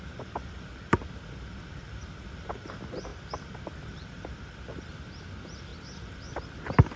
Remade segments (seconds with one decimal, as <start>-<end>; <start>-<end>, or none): 1.5-2.2; 3.1-4.6; 5.7-6.6